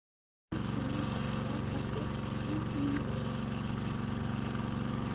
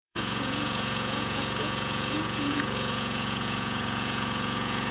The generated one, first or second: second